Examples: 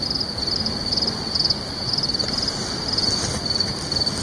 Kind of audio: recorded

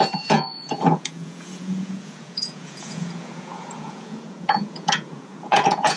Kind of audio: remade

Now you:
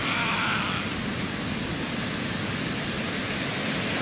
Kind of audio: recorded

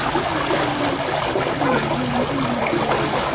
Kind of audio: recorded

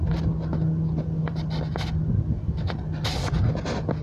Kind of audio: recorded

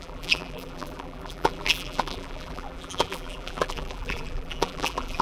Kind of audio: remade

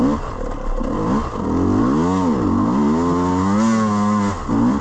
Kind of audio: recorded